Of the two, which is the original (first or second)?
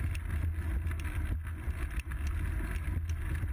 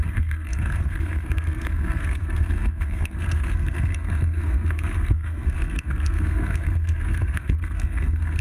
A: first